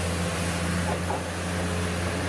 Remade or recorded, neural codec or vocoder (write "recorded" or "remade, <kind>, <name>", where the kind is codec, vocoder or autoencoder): recorded